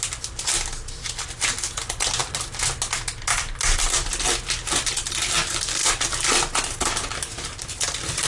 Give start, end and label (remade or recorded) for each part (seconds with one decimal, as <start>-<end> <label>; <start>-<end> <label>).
0.0-8.3 recorded